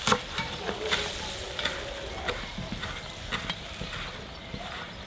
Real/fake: real